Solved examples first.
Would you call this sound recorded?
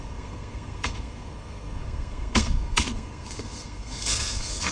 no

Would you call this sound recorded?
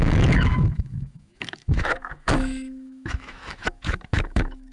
no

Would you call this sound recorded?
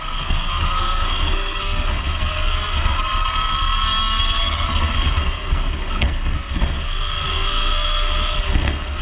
no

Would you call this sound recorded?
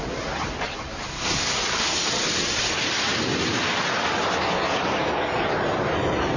yes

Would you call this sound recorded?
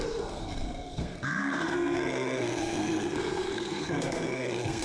no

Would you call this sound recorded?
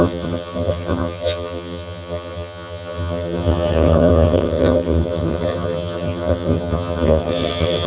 no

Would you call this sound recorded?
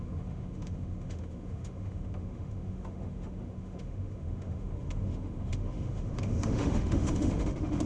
no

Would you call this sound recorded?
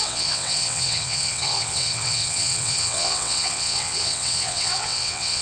no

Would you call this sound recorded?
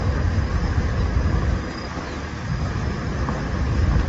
yes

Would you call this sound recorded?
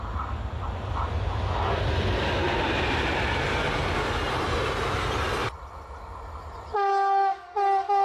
yes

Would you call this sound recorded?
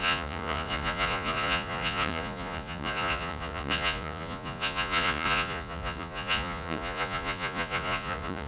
no